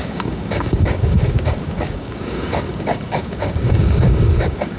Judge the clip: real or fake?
fake